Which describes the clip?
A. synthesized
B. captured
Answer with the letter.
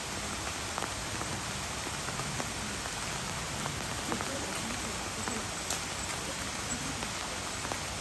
B